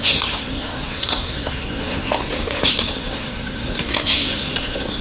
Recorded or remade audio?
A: remade